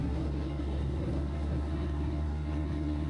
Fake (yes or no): yes